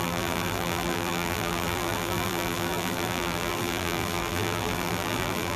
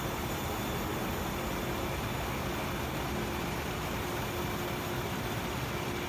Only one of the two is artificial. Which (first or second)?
first